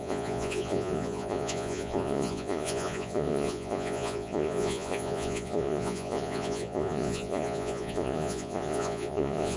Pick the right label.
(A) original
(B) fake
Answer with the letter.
B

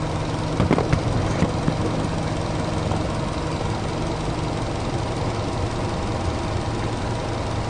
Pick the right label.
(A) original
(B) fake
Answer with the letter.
A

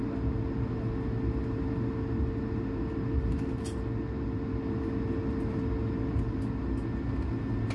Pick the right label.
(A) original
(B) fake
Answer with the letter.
A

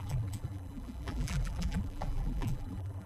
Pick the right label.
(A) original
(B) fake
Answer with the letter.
B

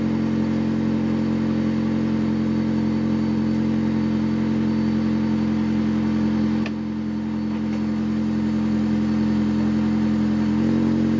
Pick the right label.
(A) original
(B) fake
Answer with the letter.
A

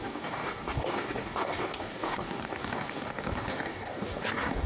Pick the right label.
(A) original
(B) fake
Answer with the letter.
B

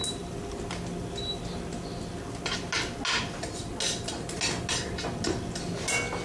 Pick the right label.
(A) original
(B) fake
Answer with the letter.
A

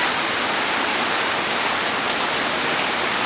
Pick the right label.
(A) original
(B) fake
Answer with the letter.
A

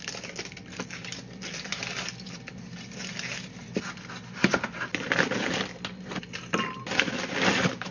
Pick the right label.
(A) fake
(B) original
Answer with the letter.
B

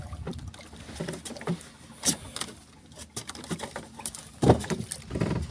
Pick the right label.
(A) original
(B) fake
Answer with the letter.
A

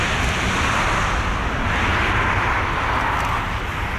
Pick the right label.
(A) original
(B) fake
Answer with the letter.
A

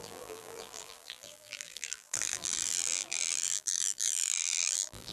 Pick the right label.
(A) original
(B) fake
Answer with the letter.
B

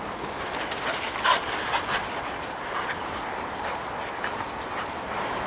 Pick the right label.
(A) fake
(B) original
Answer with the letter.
B